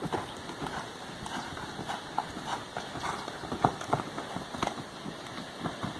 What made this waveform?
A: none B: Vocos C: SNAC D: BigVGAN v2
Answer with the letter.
A